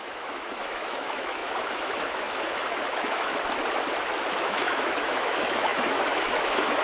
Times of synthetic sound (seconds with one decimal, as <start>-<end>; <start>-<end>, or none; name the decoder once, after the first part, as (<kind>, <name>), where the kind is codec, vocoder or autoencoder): 0.0-3.3 (autoencoder, DAC-VAE); 4.3-6.8